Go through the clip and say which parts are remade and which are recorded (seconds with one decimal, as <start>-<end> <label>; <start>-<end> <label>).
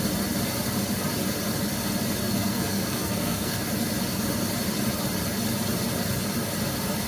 0.0-2.2 recorded; 2.2-3.6 remade; 3.6-7.1 recorded